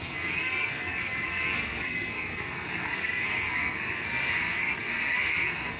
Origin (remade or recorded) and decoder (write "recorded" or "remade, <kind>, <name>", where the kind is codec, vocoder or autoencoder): remade, codec, SNAC